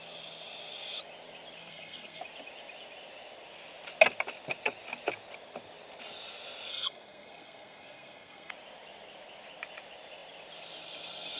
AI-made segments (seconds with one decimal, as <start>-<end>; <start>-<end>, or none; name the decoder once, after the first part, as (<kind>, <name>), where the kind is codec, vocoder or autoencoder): 1.6-2.2 (codec, SNAC); 6.7-8.5